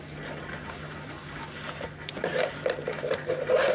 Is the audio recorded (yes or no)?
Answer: yes